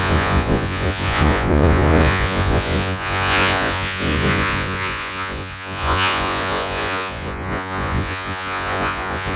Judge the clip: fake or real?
fake